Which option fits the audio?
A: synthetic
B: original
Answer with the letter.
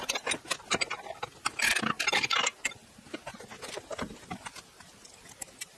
B